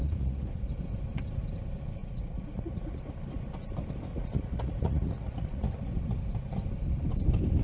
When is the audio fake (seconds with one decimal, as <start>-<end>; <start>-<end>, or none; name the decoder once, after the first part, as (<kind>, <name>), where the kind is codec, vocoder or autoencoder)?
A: 0.0-0.7 (vocoder, Vocos); 2.0-3.0; 4.1-5.7

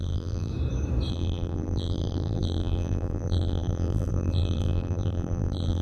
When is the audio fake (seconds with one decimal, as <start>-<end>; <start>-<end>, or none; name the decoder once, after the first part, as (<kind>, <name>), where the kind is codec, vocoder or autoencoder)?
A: 0.0-0.5 (vocoder, BigVGAN v2); 1.1-5.8

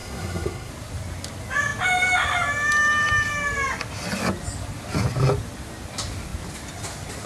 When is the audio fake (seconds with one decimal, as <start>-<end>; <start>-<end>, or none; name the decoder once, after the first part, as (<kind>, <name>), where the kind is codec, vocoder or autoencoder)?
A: 0.0-0.7 (codec, SNAC)

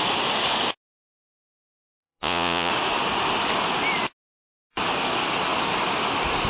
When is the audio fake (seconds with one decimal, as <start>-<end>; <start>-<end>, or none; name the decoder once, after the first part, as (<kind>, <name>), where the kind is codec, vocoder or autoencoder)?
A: 2.0-2.7 (vocoder, Vocos)

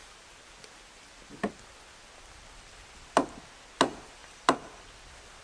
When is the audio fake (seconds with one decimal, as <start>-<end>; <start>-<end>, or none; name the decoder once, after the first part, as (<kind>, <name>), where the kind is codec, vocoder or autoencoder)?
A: 4.2-4.8 (vocoder, BigVGAN v2)

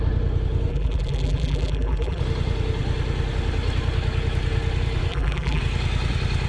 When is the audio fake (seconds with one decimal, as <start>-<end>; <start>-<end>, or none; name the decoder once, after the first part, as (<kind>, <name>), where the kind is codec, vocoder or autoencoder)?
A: 0.7-2.2 (vocoder, BigVGAN v2); 5.1-5.6

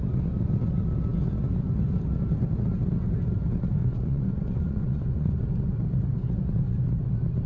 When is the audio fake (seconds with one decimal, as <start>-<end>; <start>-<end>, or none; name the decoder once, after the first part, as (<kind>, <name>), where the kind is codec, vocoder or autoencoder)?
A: 3.8-5.4 (vocoder, Vocos)